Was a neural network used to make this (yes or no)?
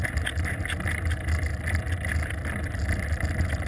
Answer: no